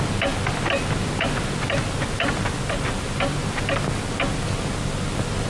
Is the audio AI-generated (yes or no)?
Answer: no